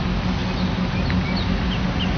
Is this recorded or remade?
recorded